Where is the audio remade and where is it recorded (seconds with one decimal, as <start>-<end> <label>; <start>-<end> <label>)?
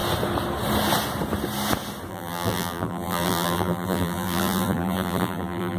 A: 0.0-2.1 recorded; 2.1-5.8 remade